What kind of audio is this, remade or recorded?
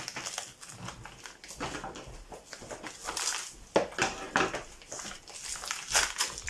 recorded